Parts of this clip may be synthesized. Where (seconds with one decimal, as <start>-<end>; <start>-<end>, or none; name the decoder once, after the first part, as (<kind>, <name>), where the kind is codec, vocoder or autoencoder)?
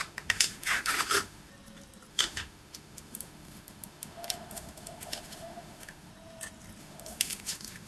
0.0-1.5 (autoencoder, DAC-VAE); 2.1-6.1; 6.8-7.9